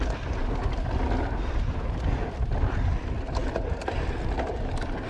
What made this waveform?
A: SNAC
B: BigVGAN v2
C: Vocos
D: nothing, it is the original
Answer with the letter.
D